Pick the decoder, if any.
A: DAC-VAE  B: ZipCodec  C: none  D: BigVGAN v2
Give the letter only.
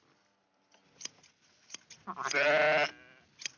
C